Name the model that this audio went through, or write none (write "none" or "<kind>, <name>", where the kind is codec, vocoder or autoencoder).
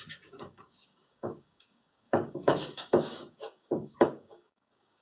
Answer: codec, DAC